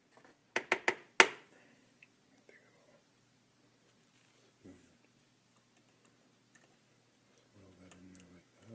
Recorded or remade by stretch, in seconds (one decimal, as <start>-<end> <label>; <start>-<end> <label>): 0.0-8.7 recorded